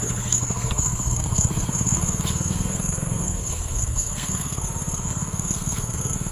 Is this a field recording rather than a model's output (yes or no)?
no